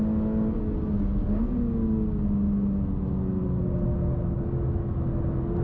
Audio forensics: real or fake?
real